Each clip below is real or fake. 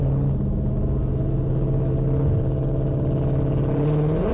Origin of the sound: real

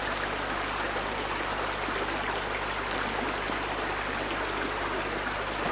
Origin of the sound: real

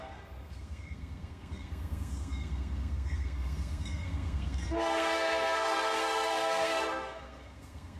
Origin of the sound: fake